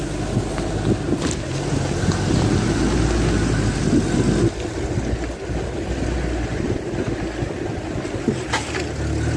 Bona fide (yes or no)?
yes